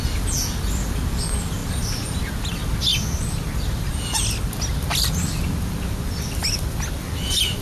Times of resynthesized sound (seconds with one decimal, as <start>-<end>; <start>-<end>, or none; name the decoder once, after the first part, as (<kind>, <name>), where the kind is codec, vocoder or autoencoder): none